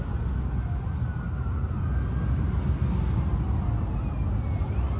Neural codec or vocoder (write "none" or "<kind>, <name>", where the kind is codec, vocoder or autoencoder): none